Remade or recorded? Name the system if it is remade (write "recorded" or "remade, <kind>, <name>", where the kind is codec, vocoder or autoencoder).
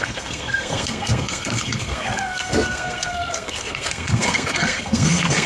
remade, codec, SNAC